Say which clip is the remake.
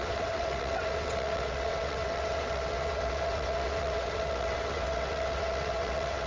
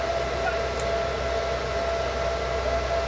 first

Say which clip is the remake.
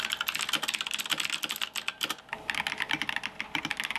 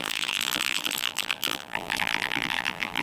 second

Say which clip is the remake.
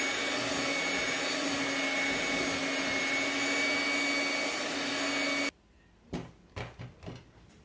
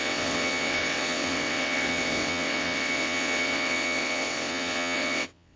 second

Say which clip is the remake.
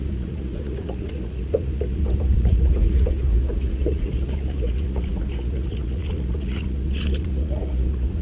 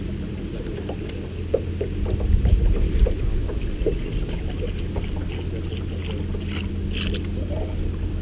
first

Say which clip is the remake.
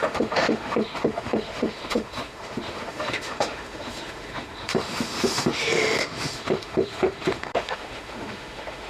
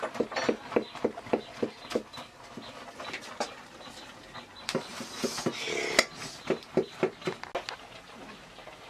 first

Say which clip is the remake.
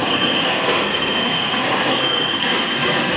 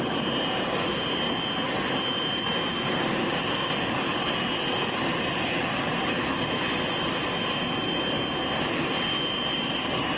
first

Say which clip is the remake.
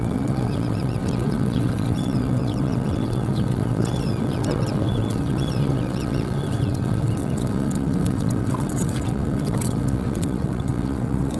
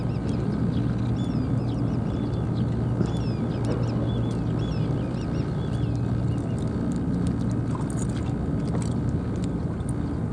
first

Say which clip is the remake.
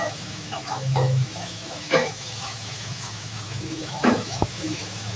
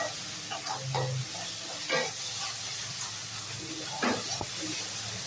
first